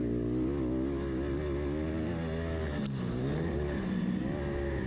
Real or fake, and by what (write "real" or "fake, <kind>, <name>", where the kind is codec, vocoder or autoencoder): real